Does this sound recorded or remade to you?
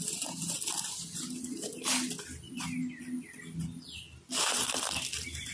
remade